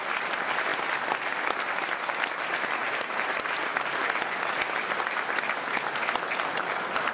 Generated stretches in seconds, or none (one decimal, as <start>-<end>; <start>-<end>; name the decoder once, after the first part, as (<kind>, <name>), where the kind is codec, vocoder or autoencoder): none